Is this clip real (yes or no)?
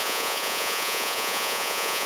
no